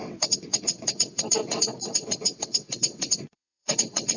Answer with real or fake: fake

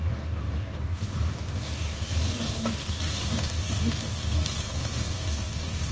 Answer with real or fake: fake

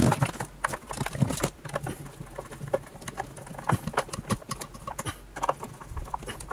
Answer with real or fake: real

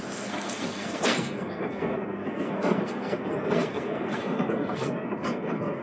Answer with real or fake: fake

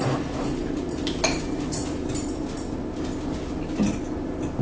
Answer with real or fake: real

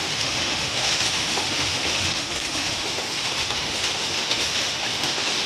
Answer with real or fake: fake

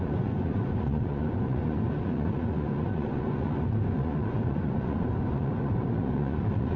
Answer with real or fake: fake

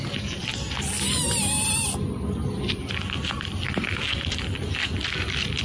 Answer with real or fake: real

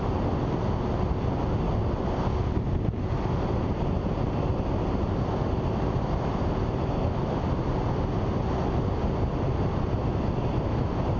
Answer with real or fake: real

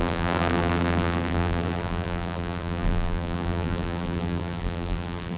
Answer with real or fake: fake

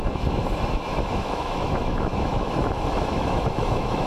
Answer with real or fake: fake